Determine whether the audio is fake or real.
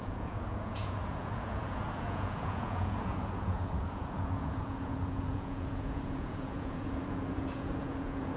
fake